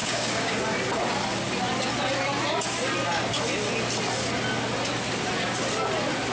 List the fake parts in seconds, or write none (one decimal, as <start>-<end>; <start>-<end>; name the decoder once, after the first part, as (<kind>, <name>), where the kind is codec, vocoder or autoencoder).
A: 0.0-0.6 (codec, DAC)